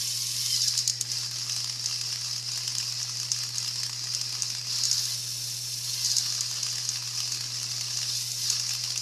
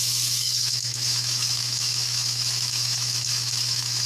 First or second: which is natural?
first